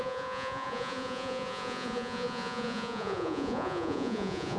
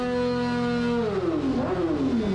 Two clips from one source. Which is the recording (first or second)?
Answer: second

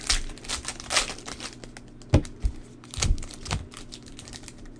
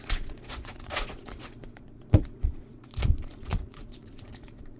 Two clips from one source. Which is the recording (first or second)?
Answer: first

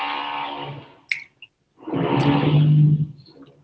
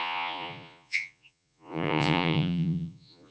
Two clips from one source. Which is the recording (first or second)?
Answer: first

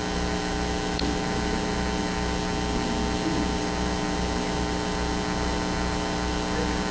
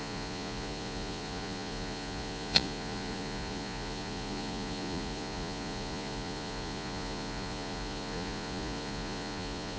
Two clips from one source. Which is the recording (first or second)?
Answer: first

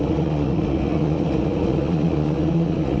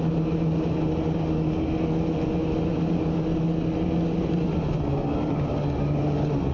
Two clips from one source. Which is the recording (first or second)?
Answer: second